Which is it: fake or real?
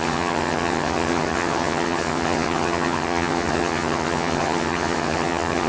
fake